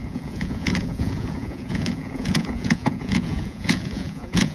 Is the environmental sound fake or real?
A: fake